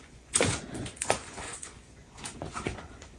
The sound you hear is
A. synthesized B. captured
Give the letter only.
A